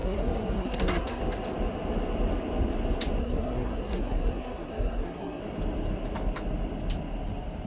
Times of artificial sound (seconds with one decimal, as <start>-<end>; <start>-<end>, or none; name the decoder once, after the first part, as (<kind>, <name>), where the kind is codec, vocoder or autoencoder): 0.0-1.2 (codec, SNAC); 3.2-5.4